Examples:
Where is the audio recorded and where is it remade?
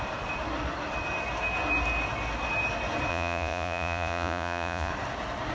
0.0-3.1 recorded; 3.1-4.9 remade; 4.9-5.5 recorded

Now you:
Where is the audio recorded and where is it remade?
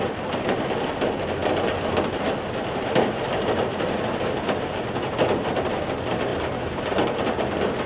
0.0-7.9 recorded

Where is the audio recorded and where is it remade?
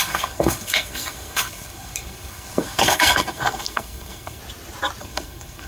0.0-4.4 remade; 4.4-5.0 recorded; 5.0-5.7 remade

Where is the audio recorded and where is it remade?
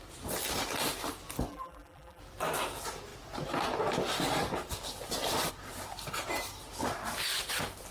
0.0-1.5 recorded; 1.5-2.2 remade; 2.2-7.9 recorded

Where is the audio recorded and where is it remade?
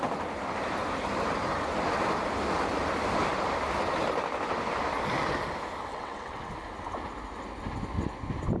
0.0-5.9 recorded; 5.9-6.5 remade; 6.5-8.6 recorded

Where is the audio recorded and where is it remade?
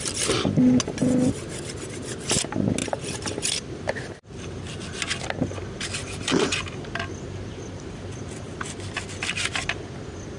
0.0-10.4 recorded